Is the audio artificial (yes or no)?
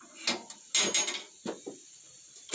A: no